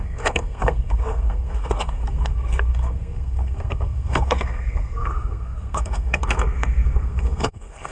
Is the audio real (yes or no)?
no